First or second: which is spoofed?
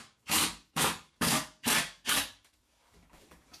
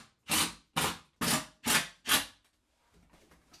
first